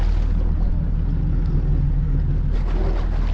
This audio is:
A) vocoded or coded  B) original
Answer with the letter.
B